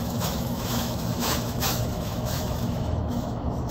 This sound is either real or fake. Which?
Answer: fake